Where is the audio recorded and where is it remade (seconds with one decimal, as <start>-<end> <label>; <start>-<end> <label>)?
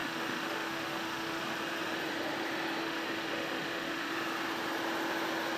0.0-1.4 remade; 1.4-2.8 recorded; 2.8-4.1 remade; 4.1-5.6 recorded